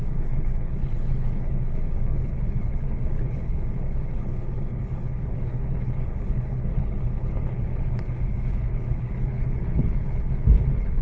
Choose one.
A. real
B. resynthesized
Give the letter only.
B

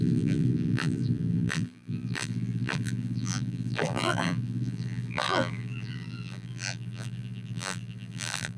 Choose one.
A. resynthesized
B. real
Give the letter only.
A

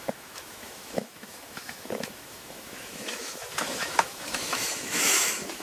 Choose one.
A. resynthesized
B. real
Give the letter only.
A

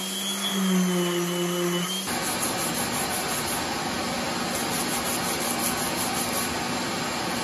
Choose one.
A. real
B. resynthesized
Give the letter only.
A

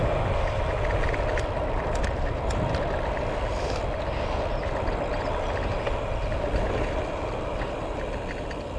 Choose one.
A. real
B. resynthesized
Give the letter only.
A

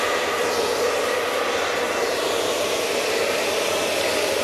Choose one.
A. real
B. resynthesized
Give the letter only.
A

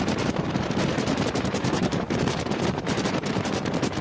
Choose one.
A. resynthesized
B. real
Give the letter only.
A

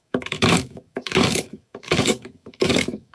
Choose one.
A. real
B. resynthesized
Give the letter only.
B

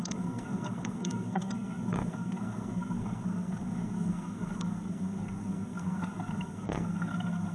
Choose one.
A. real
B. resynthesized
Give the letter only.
B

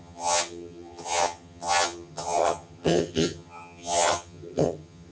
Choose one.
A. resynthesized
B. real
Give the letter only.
A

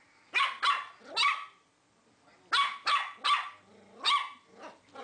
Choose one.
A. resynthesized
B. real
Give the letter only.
B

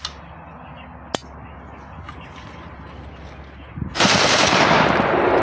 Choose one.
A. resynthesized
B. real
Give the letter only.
B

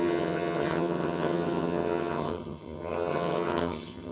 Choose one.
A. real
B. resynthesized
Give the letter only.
B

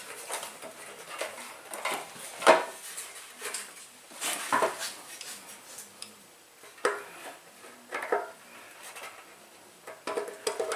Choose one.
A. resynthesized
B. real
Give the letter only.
B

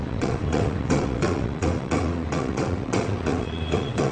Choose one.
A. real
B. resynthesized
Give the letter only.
B